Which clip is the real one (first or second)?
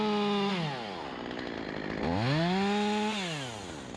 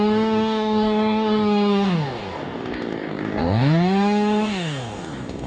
first